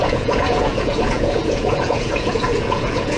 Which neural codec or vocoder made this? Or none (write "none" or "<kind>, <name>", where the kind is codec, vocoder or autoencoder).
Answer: vocoder, Vocos